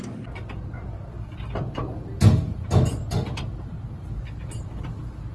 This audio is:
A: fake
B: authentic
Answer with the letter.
B